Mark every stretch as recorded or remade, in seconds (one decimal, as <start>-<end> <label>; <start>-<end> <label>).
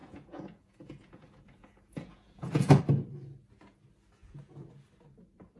0.0-2.8 remade; 2.8-4.2 recorded; 4.2-4.7 remade; 4.7-5.6 recorded